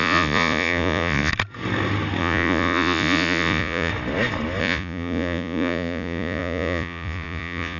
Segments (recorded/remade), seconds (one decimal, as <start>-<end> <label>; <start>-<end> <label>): 0.0-1.3 remade; 1.3-2.2 recorded; 2.2-3.9 remade; 3.9-4.6 recorded; 4.6-7.8 remade